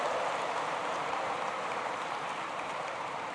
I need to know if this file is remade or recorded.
remade